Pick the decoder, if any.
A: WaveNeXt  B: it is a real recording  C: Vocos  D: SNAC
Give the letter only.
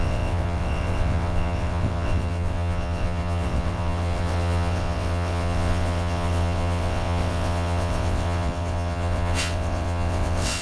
A